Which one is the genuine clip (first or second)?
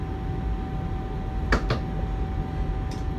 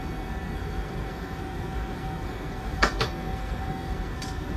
first